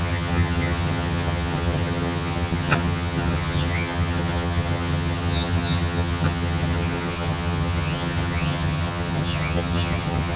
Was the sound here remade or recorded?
remade